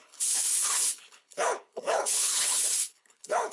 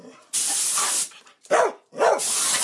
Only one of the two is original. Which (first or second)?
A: second